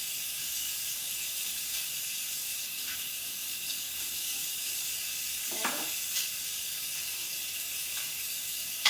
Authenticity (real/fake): fake